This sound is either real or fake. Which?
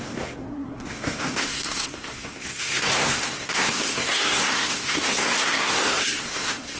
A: fake